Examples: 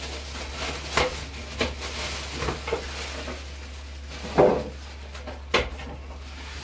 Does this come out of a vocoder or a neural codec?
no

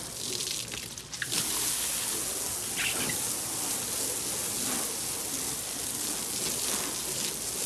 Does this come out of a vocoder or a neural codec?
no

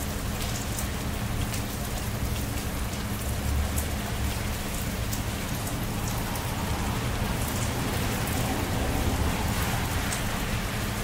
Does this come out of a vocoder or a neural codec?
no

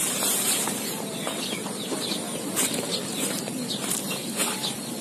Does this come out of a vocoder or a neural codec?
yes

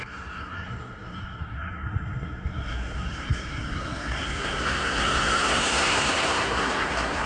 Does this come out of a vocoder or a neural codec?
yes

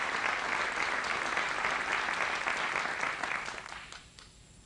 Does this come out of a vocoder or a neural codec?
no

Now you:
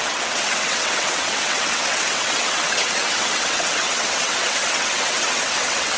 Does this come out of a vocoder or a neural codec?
yes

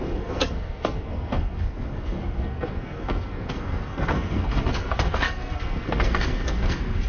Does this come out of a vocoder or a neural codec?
yes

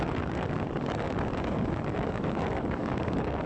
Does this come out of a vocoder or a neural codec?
yes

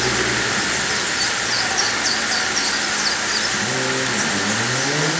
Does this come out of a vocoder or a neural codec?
no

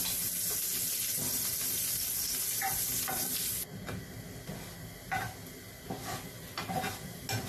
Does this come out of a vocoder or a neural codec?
no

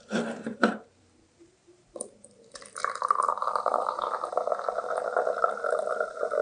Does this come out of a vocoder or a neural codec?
yes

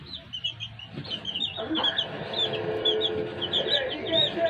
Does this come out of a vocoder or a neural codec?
no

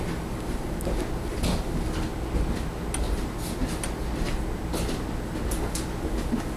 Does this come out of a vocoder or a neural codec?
no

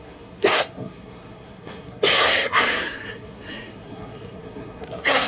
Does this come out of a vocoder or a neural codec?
yes